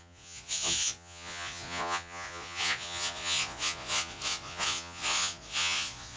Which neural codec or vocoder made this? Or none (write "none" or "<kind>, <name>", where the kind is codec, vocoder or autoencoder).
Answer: vocoder, Vocos